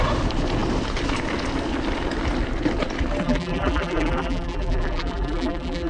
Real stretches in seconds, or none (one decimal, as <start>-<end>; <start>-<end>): 0.0-3.2